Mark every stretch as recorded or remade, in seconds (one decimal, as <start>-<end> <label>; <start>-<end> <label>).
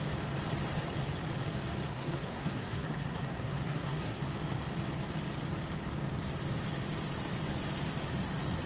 0.0-1.9 recorded; 1.9-4.2 remade; 4.2-8.7 recorded